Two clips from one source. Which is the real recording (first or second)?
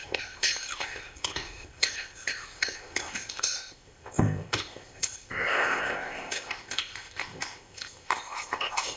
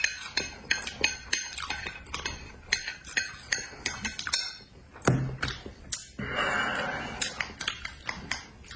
second